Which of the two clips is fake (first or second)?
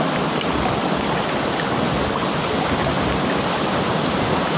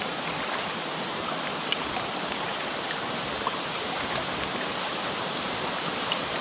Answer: second